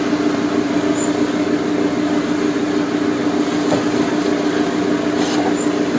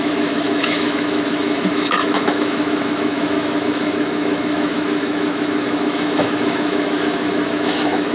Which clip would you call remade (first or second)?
second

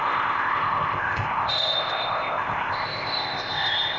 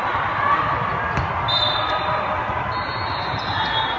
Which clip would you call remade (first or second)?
first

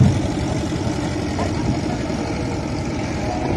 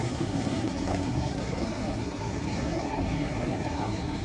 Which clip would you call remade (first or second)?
second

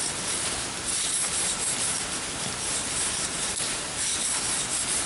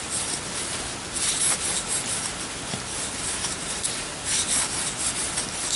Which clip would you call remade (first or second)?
first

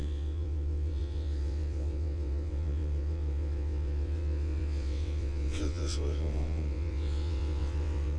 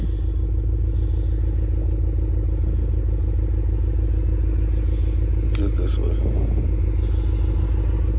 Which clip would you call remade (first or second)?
first